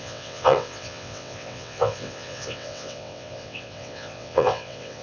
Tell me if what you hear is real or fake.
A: fake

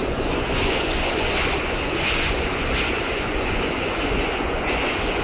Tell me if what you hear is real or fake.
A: fake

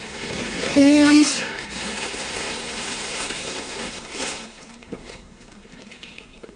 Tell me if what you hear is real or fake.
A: fake